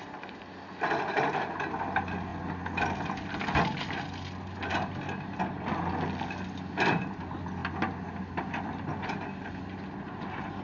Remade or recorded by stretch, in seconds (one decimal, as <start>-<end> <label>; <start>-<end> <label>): 0.0-2.3 remade; 2.3-5.4 recorded; 5.4-10.6 remade